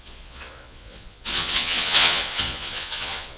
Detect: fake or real fake